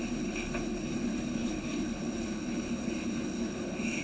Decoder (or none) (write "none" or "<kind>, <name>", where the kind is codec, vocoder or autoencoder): codec, HILCodec